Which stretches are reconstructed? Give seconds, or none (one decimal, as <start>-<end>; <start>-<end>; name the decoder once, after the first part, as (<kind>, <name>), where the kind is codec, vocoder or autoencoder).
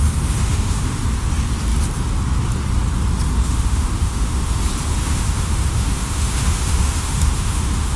0.0-1.0 (autoencoder, DAC-VAE); 3.4-4.6; 5.0-8.0